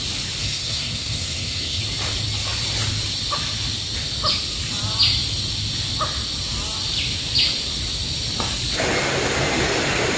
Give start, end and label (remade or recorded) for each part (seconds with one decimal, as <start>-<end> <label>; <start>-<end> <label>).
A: 0.0-0.4 recorded; 0.4-1.8 remade; 1.8-10.2 recorded